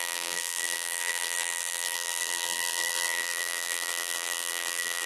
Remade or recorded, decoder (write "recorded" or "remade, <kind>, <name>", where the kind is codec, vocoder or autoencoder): remade, vocoder, BigVGAN v2